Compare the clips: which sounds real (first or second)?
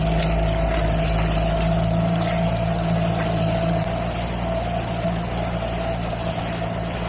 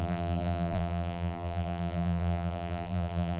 first